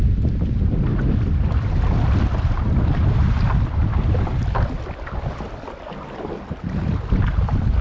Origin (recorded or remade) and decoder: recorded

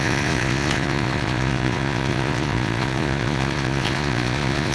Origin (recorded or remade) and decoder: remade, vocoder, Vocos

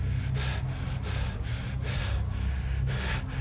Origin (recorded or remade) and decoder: recorded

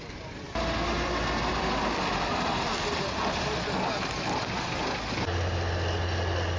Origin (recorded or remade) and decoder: recorded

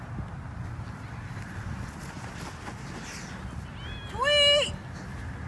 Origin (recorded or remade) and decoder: recorded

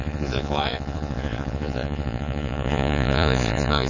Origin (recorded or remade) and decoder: remade, vocoder, Vocos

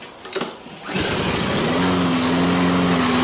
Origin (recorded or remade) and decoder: recorded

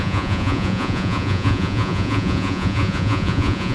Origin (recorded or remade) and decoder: remade, vocoder, Vocos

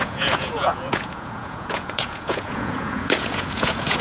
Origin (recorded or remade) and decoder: remade, vocoder, Vocos